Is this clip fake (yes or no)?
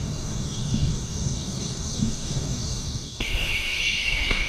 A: yes